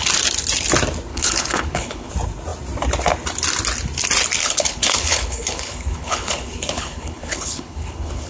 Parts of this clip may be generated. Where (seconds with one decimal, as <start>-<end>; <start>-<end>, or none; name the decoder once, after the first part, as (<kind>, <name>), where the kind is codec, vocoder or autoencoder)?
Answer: 1.1-2.1 (codec, HILCodec); 4.4-8.3